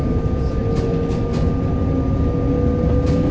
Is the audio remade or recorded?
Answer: recorded